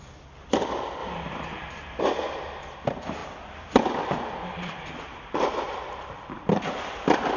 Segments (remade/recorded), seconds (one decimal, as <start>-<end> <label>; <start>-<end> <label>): 0.0-1.0 recorded; 1.0-2.0 remade; 2.0-3.2 recorded; 3.2-7.4 remade